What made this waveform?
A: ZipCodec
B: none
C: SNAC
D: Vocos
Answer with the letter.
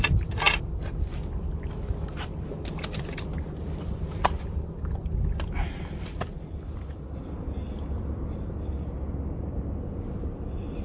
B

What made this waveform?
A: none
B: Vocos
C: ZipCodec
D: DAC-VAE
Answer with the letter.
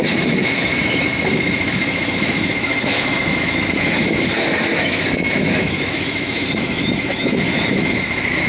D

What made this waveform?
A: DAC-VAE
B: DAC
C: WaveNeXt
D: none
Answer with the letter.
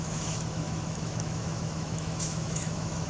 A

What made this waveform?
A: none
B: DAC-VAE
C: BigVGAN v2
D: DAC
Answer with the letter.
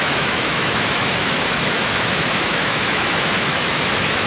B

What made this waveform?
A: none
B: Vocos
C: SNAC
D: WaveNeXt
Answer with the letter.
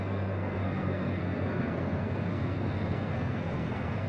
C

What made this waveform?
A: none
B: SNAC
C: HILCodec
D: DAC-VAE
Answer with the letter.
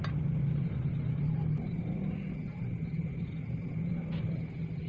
A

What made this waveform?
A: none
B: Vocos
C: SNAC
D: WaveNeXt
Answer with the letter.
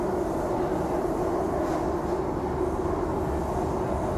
A